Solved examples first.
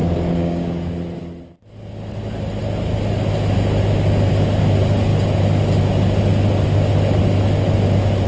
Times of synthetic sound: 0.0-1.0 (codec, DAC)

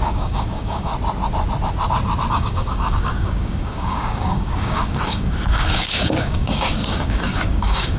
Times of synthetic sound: 0.0-0.9 (codec, DAC); 2.3-8.0

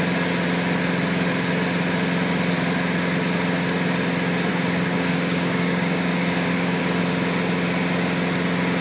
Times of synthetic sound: 4.5-6.8 (codec, DAC)

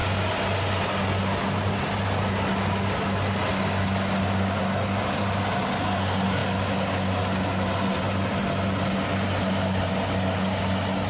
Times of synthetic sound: none

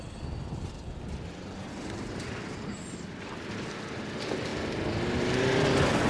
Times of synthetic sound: none